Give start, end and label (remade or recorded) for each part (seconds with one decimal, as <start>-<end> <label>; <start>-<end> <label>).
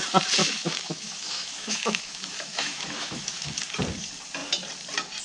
0.0-0.4 recorded; 0.4-3.5 remade; 3.5-5.2 recorded